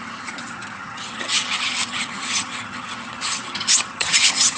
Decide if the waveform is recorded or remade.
remade